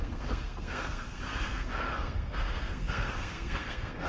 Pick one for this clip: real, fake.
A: fake